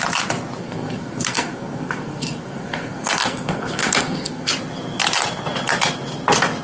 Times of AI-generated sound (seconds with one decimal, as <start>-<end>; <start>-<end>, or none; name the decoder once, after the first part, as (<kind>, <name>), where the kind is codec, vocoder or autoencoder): 0.6-4.5 (codec, SNAC)